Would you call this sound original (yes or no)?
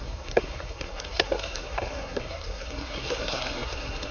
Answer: no